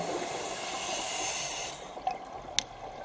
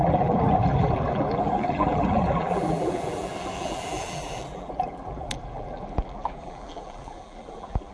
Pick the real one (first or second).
first